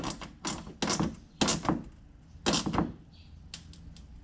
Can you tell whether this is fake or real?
real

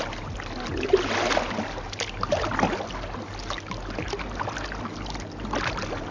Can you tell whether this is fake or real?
real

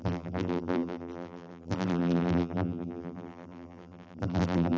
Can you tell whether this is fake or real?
fake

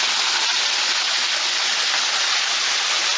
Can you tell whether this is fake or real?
real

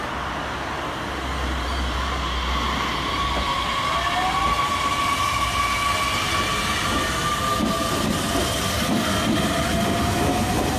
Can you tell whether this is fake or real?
real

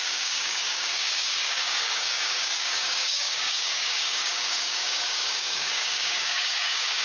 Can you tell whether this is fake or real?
fake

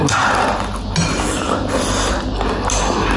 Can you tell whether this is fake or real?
real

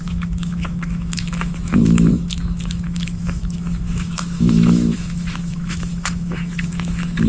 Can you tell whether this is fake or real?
fake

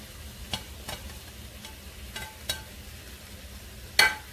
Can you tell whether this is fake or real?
real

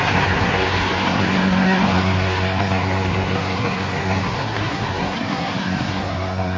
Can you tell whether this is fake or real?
fake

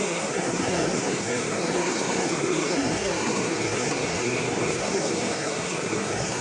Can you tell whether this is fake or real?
fake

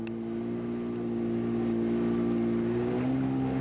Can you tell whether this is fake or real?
real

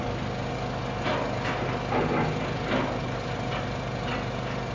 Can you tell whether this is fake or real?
real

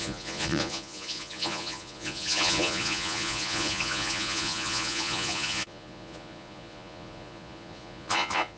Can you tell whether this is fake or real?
fake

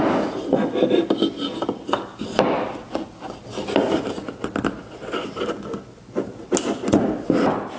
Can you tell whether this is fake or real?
real